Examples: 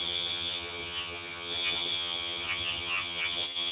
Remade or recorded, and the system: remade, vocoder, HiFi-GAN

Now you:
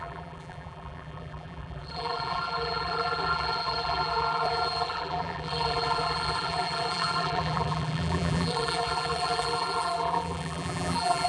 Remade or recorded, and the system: remade, vocoder, BigVGAN v2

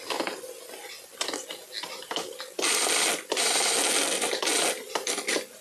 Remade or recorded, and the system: recorded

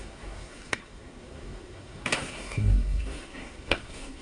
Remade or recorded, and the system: remade, codec, SNAC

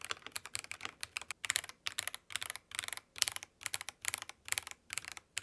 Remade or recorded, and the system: remade, vocoder, BigVGAN v2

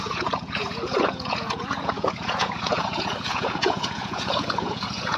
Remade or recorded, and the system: remade, vocoder, Vocos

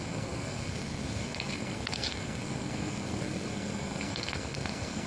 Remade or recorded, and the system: remade, codec, SNAC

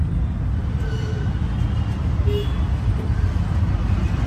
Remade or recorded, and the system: recorded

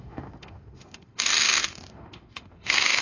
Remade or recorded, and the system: remade, autoencoder, DAC-VAE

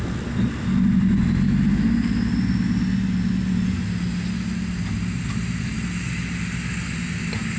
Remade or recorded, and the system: recorded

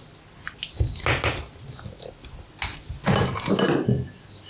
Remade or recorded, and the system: recorded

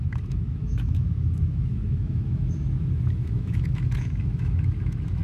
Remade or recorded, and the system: remade, autoencoder, DAC-VAE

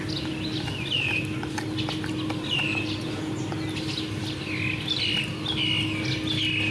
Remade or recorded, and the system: recorded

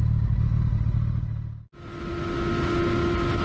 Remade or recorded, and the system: recorded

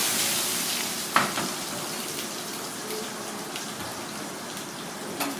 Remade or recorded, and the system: remade, vocoder, BigVGAN v2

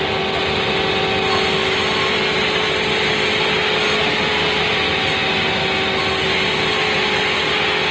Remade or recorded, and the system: recorded